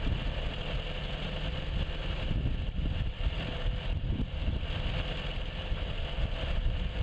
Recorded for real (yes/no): no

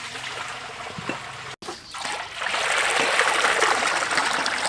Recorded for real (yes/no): yes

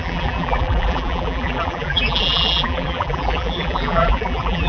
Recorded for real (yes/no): no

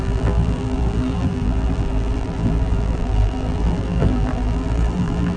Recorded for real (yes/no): no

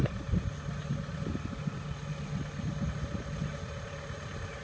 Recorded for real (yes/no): yes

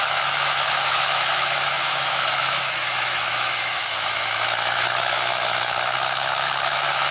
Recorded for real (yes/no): no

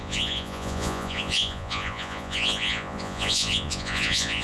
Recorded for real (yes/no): no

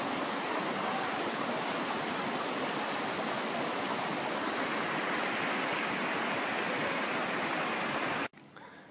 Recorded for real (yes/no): yes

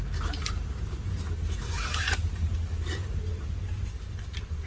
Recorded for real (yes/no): yes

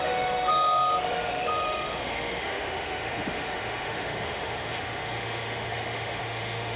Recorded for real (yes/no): no